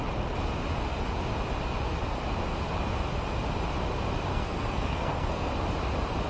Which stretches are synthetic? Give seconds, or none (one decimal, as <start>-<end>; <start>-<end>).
4.3-5.5